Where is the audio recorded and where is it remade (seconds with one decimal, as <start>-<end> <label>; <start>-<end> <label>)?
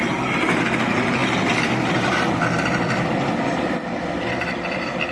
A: 0.0-5.1 recorded